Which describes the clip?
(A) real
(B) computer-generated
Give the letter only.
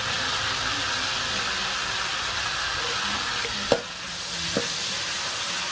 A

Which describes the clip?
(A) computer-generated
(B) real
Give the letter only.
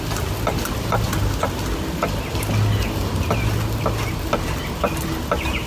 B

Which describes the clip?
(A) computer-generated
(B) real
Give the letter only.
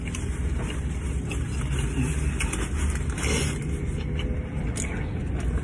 B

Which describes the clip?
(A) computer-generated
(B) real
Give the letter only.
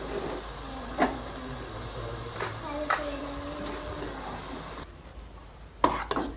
B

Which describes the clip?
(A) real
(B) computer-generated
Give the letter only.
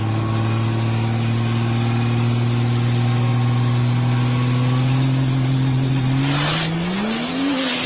A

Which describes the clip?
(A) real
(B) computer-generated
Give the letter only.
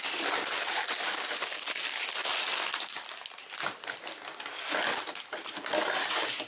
A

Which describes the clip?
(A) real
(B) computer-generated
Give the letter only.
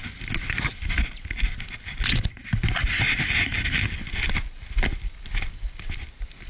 A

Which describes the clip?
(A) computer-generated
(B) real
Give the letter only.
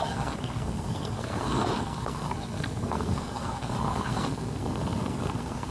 A